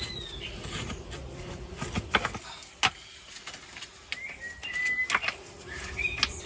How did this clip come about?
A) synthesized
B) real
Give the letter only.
B